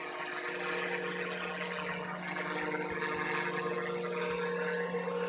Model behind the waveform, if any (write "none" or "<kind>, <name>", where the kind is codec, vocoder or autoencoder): none